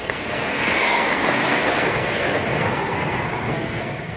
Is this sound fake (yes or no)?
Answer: yes